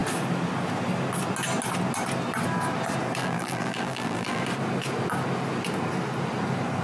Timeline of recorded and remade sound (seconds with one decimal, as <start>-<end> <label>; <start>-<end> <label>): 0.0-3.2 recorded; 3.2-4.4 remade; 4.4-6.8 recorded